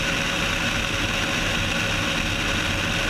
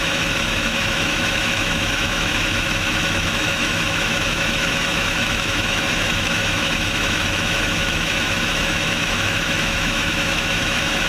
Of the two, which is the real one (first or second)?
first